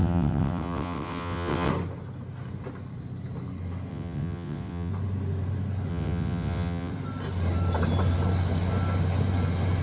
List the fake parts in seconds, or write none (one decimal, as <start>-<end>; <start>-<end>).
0.0-1.7; 3.9-4.9; 5.9-6.9